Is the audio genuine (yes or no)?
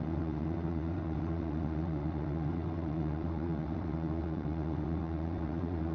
no